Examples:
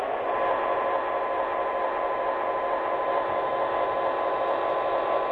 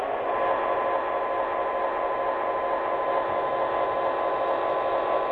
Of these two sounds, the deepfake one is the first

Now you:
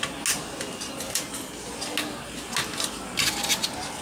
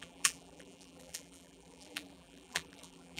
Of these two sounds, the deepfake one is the second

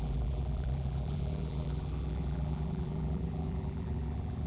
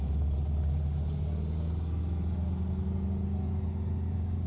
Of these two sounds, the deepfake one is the first